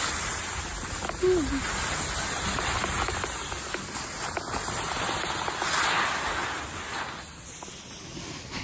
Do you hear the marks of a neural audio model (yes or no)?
no